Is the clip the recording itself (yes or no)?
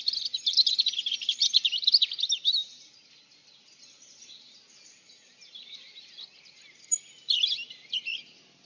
yes